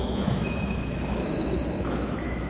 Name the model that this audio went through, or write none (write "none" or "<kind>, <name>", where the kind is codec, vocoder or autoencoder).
autoencoder, DAC-VAE